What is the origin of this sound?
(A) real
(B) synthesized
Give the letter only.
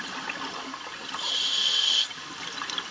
A